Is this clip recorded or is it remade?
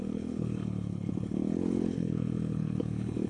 remade